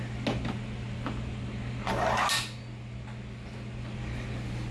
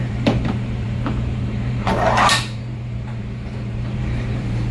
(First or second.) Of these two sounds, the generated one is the second